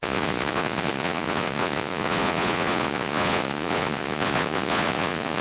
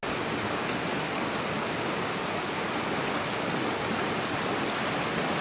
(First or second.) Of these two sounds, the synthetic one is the first